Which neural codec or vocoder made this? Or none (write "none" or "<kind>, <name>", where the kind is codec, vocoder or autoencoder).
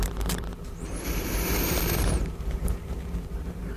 vocoder, BigVGAN v2